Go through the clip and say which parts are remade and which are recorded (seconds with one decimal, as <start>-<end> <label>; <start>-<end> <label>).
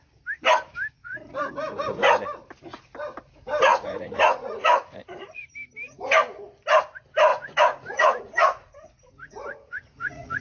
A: 0.0-1.0 recorded; 1.0-1.5 remade; 1.5-3.7 recorded; 3.7-5.5 remade; 5.5-7.3 recorded; 7.3-10.4 remade